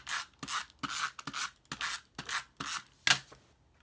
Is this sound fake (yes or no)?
no